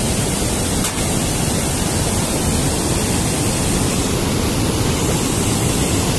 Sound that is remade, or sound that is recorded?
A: recorded